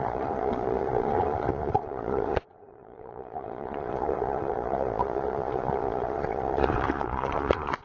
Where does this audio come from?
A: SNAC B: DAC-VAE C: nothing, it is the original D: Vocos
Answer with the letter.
D